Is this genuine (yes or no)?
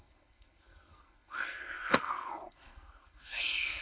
no